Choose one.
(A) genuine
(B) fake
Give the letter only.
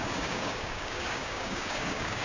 B